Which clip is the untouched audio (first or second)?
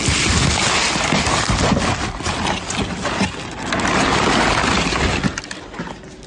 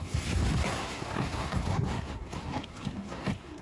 first